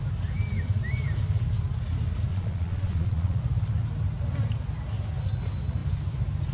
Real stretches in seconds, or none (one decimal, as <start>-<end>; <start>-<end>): 0.0-2.3; 3.4-6.5